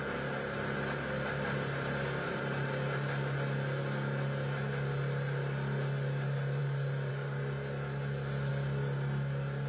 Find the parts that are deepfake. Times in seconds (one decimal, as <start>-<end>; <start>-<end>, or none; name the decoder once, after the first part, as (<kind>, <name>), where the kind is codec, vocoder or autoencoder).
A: none